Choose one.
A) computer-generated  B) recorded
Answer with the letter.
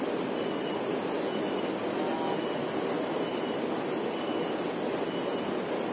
B